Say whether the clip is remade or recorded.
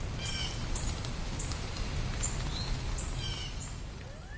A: recorded